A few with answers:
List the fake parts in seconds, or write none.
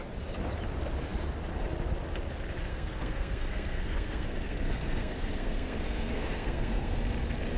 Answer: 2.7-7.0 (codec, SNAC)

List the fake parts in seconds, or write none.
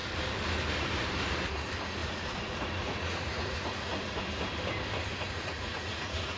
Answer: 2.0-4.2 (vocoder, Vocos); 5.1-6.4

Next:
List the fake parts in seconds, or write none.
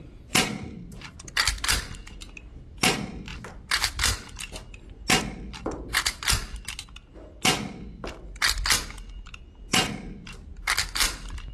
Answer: none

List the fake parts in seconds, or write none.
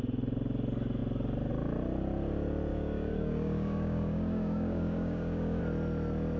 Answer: 2.7-5.6 (codec, DAC)